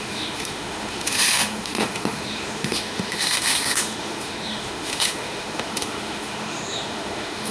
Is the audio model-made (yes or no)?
yes